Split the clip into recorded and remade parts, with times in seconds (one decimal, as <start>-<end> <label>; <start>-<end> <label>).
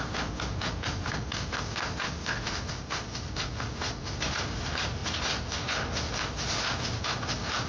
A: 0.0-7.7 recorded